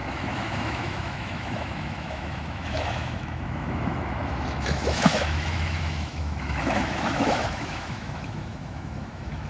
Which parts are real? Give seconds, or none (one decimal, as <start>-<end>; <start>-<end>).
none